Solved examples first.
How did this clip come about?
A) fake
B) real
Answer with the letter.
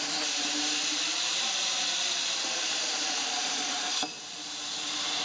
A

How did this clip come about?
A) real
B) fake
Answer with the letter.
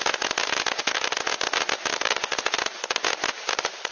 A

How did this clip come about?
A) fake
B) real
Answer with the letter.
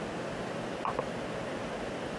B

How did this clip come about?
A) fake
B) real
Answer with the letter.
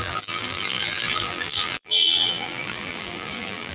A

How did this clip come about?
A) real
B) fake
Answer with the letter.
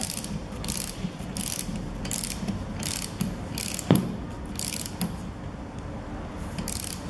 A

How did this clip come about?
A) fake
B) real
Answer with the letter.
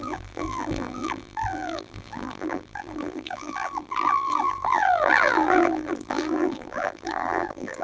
A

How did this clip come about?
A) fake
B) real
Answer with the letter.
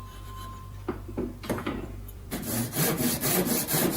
A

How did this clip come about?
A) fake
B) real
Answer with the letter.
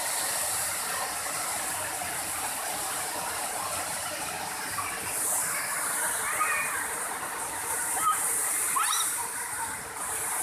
A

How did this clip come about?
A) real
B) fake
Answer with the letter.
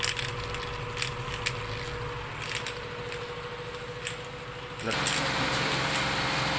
A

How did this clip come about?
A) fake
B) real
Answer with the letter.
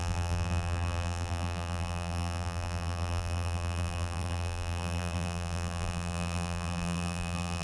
A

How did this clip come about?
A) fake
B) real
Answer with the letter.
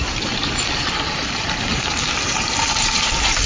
A